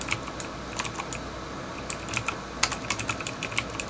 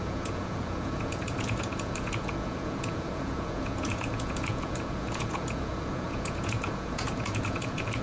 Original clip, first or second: first